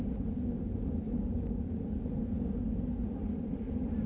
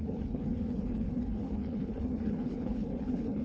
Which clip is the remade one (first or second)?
second